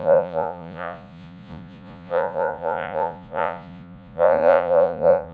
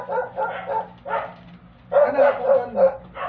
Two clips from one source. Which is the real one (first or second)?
second